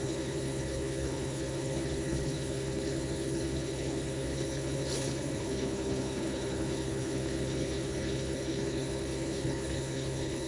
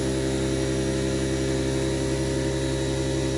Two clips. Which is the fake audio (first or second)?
first